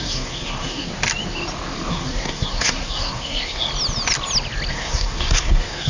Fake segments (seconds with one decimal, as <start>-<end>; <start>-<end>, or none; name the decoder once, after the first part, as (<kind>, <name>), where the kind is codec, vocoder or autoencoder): 0.0-0.9 (codec, SNAC); 1.9-3.7; 4.7-5.9